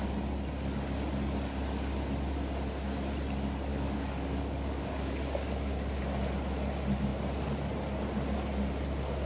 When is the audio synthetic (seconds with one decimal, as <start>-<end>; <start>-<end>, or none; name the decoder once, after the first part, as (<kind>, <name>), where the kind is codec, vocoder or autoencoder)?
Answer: 3.7-6.0 (codec, DAC)